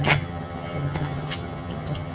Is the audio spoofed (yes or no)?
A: yes